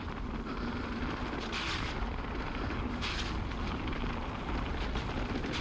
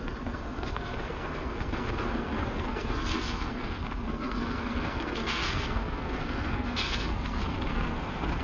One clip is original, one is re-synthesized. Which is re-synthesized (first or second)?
second